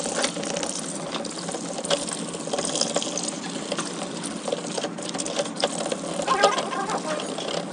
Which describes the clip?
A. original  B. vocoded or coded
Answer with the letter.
A